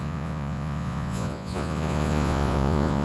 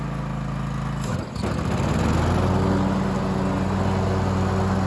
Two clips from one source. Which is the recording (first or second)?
second